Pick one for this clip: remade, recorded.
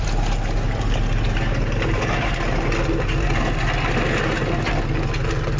recorded